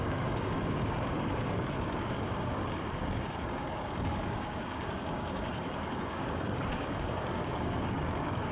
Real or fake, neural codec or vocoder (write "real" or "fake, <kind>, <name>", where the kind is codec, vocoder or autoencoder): fake, codec, DAC